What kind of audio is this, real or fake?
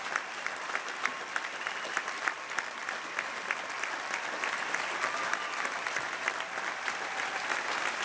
fake